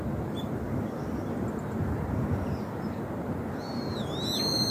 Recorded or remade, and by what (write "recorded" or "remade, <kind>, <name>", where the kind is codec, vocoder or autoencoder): recorded